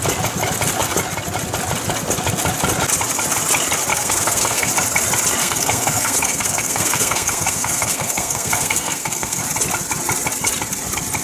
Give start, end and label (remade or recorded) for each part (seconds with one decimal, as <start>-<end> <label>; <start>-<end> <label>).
0.0-3.9 recorded; 3.9-4.7 remade; 4.7-5.4 recorded; 5.4-9.4 remade; 9.4-11.2 recorded